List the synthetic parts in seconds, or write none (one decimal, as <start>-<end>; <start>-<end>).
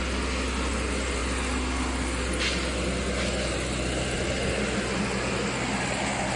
none